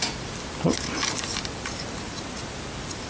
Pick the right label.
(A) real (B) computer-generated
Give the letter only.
A